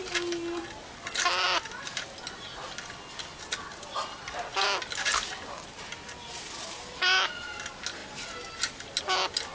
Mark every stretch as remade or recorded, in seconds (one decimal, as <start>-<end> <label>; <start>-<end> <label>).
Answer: 0.0-9.5 recorded